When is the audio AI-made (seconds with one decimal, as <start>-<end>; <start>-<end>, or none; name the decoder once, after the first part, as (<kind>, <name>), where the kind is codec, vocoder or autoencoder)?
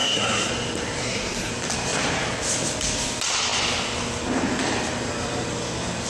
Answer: 0.0-0.5 (codec, SNAC); 1.0-1.5